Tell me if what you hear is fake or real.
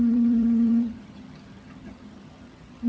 fake